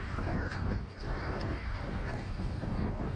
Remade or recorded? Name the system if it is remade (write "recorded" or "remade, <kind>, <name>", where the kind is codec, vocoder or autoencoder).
remade, codec, DAC